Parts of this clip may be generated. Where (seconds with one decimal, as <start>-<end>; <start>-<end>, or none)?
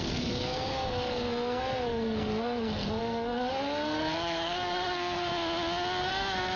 0.0-5.3; 6.0-6.6